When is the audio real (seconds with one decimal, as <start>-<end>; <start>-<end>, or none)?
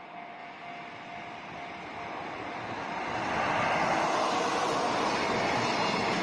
0.0-6.2